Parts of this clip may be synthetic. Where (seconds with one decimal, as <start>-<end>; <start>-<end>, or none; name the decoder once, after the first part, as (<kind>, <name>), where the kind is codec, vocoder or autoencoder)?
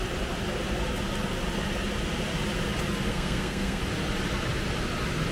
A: 3.1-3.8 (codec, SNAC)